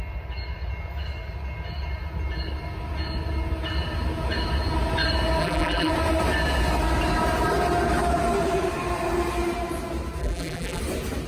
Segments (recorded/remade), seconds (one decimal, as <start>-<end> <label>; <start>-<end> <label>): 0.0-5.4 recorded; 5.4-5.9 remade; 5.9-10.2 recorded; 10.2-10.8 remade; 10.8-11.3 recorded